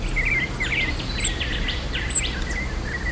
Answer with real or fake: fake